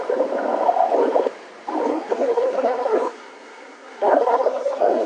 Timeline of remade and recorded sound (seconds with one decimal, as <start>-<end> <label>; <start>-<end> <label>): 0.0-1.9 recorded; 1.9-5.1 remade